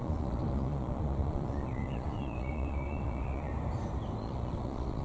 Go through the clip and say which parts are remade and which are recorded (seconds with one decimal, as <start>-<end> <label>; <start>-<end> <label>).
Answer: 0.0-3.5 remade; 3.5-4.2 recorded; 4.2-5.0 remade